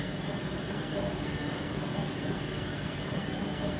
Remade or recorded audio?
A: remade